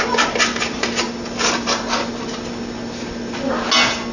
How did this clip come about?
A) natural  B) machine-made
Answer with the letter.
A